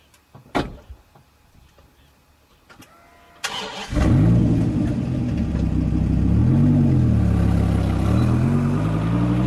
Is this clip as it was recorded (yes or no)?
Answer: yes